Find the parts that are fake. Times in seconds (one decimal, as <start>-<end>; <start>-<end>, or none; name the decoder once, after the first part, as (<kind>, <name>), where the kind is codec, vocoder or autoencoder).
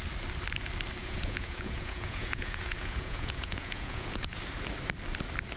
1.0-4.4 (vocoder, Vocos)